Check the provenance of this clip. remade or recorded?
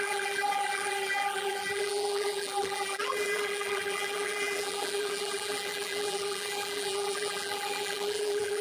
remade